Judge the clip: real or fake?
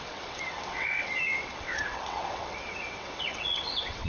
fake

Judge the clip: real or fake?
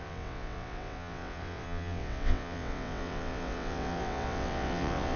fake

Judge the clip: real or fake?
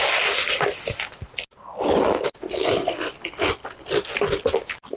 real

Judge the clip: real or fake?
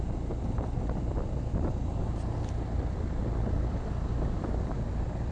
real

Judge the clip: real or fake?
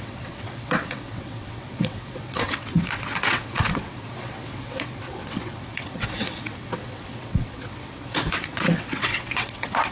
fake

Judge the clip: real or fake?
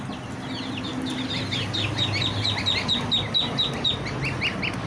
real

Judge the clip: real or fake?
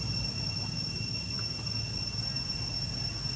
real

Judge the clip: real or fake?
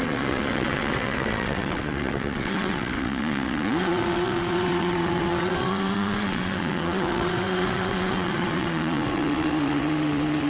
fake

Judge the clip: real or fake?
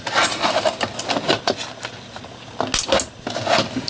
real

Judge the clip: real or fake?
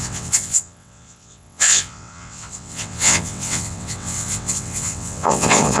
fake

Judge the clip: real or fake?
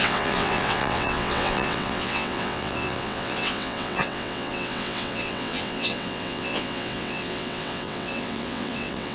fake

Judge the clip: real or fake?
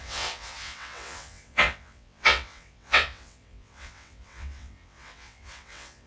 fake